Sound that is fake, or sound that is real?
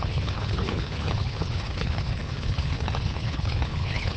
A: fake